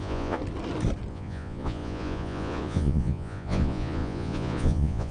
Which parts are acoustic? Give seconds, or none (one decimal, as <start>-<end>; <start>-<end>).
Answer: 0.4-1.1

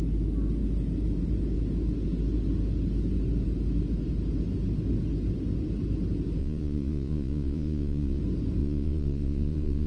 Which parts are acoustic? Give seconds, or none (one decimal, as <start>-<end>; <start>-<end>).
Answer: 0.0-6.4; 8.2-8.6